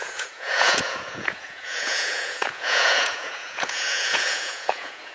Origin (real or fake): fake